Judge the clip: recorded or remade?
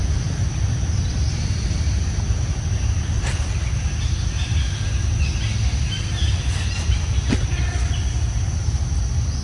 recorded